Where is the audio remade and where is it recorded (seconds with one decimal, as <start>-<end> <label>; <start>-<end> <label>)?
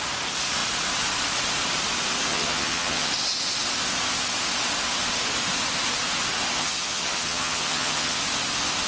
0.0-2.3 recorded; 2.3-3.1 remade; 3.1-6.6 recorded; 6.6-8.2 remade; 8.2-8.9 recorded